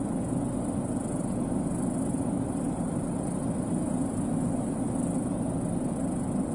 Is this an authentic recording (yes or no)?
no